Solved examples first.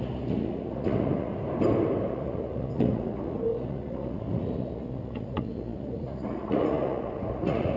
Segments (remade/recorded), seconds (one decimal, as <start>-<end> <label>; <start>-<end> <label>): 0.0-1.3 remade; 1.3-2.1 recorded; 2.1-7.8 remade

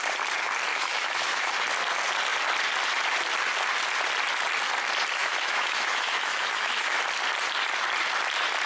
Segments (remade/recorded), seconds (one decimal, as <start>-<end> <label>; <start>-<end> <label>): 0.0-0.7 recorded; 0.7-1.5 remade; 1.5-5.2 recorded; 5.2-7.0 remade; 7.0-8.7 recorded

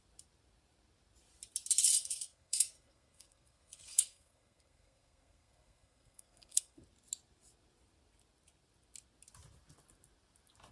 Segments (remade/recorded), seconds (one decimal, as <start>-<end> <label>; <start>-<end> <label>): 0.0-2.0 recorded; 2.0-6.8 remade; 6.8-10.7 recorded

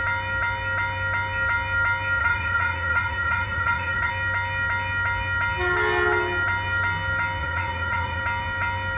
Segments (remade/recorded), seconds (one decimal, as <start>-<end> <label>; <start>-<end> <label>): 0.0-2.2 recorded; 2.2-4.1 remade; 4.1-7.4 recorded; 7.4-8.2 remade; 8.2-9.0 recorded